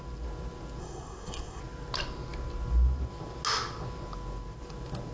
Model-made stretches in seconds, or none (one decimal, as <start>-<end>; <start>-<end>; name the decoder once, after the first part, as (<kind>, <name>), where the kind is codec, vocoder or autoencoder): 0.8-1.6 (codec, SNAC)